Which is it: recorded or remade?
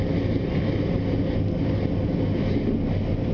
recorded